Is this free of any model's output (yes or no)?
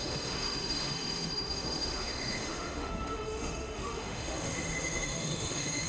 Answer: no